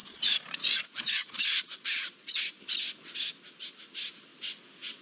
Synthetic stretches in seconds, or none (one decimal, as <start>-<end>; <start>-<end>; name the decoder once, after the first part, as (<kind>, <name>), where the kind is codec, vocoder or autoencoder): 0.0-2.4 (vocoder, Vocos)